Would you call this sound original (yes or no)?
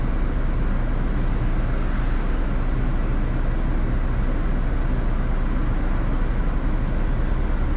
yes